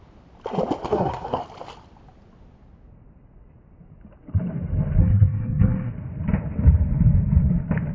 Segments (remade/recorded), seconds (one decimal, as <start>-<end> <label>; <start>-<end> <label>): 0.0-0.9 recorded; 0.9-1.4 remade; 1.4-5.0 recorded; 5.0-5.9 remade; 5.9-7.9 recorded